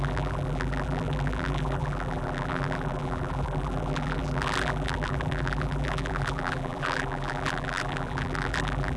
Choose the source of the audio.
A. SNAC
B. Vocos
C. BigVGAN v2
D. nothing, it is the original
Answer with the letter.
C